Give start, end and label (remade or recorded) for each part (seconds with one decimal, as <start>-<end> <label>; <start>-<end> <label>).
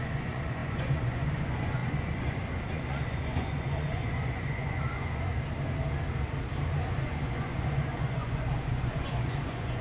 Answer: 0.0-5.3 remade; 5.3-6.9 recorded; 6.9-9.8 remade